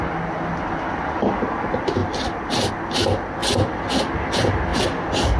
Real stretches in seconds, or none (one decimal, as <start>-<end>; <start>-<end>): 0.0-5.4